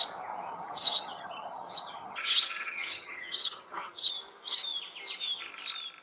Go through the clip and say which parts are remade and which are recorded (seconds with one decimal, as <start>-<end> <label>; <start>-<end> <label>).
0.0-0.5 recorded; 0.5-4.1 remade; 4.1-6.0 recorded